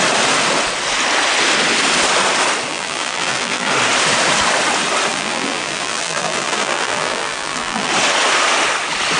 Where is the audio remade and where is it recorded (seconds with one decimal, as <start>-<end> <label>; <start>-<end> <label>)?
0.0-2.7 recorded; 2.7-3.7 remade; 3.7-5.1 recorded; 5.1-7.9 remade; 7.9-9.2 recorded